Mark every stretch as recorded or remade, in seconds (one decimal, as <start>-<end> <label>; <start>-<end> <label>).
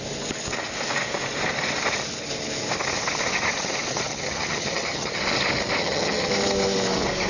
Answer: 0.0-3.9 recorded; 3.9-5.2 remade; 5.2-5.8 recorded; 5.8-6.3 remade; 6.3-7.3 recorded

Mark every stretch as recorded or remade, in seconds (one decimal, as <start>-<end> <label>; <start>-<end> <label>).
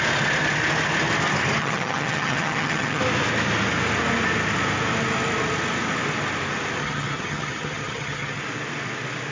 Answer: 0.0-1.6 recorded; 1.6-3.0 remade; 3.0-6.8 recorded; 6.8-8.4 remade; 8.4-9.3 recorded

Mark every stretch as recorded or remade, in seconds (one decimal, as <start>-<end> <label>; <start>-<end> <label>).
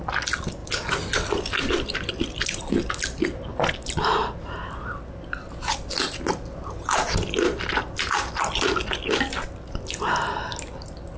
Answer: 0.0-11.2 recorded